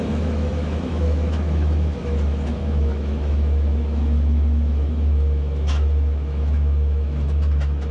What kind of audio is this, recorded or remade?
remade